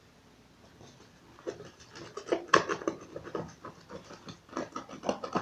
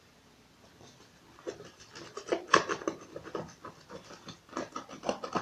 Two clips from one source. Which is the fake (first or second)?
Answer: second